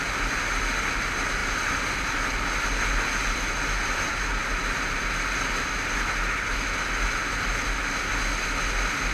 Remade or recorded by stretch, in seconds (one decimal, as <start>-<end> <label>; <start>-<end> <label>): 0.0-9.1 recorded